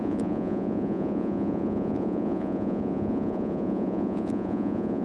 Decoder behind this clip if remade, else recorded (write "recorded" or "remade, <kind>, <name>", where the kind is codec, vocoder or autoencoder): remade, vocoder, Vocos